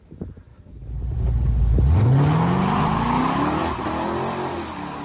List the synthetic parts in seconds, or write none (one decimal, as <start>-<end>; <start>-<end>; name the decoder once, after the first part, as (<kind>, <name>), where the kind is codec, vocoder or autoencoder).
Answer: 2.9-3.6 (codec, DAC)